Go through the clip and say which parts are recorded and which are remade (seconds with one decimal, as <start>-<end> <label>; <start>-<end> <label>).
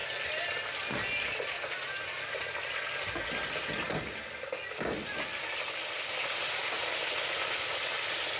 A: 0.0-8.4 recorded